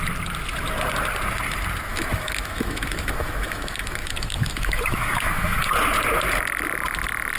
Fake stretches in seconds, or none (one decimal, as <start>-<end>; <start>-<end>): 1.9-5.7